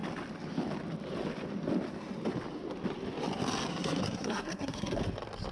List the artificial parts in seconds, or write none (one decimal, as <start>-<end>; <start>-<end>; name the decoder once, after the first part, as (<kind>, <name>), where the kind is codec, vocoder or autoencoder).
3.7-5.0 (codec, SNAC)